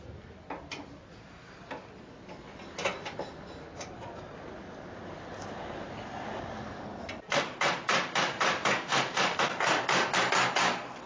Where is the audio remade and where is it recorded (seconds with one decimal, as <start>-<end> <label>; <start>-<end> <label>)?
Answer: 0.0-6.9 recorded; 6.9-10.3 remade; 10.3-11.1 recorded